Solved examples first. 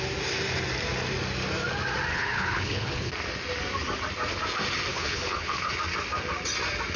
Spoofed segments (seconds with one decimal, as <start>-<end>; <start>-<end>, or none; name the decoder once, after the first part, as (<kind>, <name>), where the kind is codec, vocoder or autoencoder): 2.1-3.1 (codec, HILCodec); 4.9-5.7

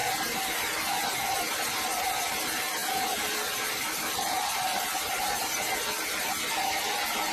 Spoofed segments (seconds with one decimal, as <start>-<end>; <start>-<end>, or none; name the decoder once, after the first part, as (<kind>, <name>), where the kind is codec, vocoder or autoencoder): 2.8-5.4 (vocoder, BigVGAN v2)

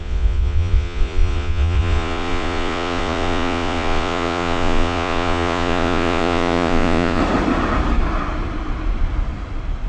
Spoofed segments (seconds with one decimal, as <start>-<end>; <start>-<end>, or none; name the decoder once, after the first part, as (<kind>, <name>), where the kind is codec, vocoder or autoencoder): 0.0-7.2 (vocoder, Vocos)

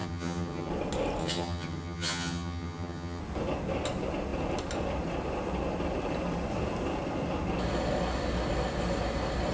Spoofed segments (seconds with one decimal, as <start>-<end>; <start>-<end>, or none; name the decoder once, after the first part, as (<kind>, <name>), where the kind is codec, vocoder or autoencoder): 0.0-0.7 (vocoder, HiFi-GAN); 1.2-3.2

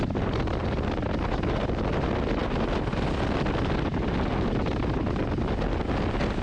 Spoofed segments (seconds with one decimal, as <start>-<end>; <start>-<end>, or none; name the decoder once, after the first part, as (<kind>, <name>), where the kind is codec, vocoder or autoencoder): none

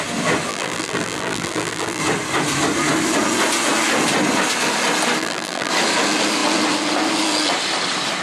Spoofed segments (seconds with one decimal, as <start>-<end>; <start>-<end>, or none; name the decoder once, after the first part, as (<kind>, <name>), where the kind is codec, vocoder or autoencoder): 0.5-2.0 (vocoder, BigVGAN v2); 5.2-5.7